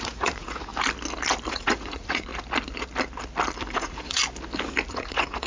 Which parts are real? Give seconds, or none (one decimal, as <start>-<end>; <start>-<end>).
0.7-1.5; 2.3-3.7; 4.2-4.9